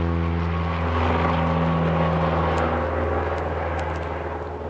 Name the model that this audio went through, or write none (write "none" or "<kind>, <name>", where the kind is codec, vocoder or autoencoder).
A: none